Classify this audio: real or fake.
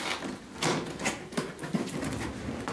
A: real